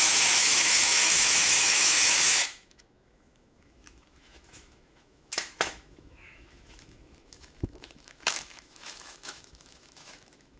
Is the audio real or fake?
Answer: fake